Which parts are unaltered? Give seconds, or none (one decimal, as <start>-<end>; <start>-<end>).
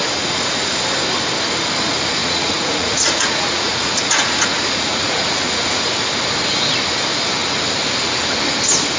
0.7-2.2; 5.8-9.0